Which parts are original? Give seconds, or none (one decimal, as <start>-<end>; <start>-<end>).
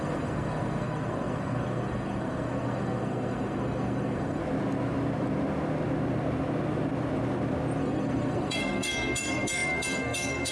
4.4-7.8